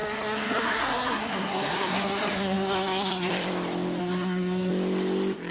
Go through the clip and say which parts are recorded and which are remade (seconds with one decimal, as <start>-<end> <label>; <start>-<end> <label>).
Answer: 0.0-3.3 remade; 3.3-4.0 recorded; 4.0-4.7 remade; 4.7-5.5 recorded